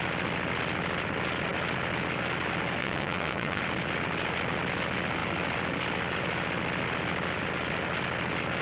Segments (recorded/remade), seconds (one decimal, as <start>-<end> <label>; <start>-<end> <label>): 0.0-2.8 recorded; 2.8-3.6 remade; 3.6-8.6 recorded